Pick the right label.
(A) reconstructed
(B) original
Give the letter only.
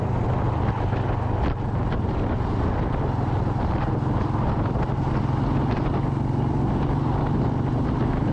B